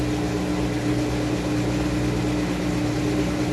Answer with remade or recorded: recorded